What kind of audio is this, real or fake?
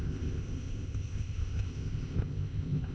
fake